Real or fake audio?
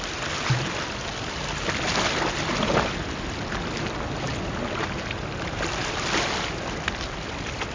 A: real